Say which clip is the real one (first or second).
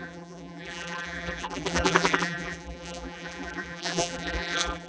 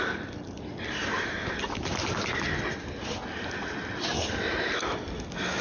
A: second